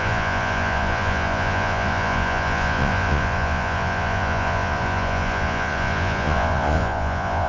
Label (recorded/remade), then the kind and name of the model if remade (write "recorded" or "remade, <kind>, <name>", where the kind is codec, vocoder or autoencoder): remade, vocoder, Vocos